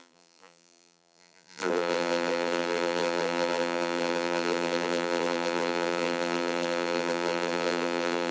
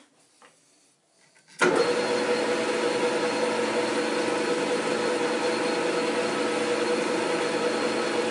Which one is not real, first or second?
first